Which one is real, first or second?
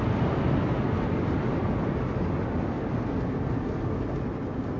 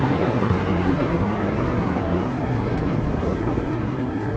first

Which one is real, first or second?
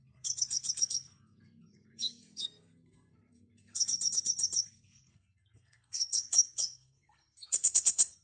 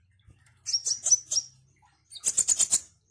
second